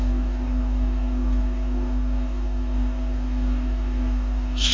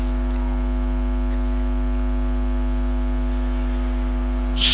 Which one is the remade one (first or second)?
first